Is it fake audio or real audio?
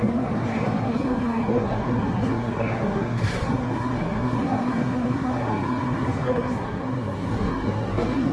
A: fake